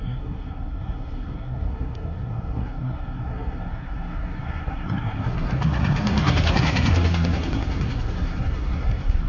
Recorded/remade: remade